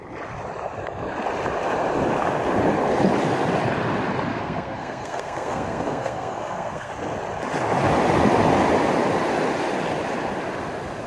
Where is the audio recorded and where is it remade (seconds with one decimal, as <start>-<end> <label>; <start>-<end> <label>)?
0.0-4.3 recorded; 4.3-6.9 remade; 6.9-11.1 recorded

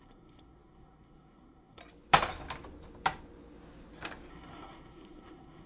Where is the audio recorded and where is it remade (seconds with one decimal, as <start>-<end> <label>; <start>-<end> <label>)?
0.0-1.8 remade; 1.8-4.3 recorded; 4.3-5.7 remade